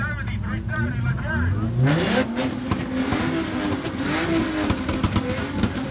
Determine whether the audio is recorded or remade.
recorded